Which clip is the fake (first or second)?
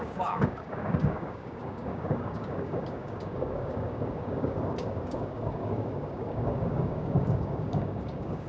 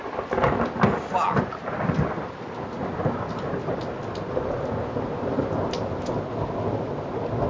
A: first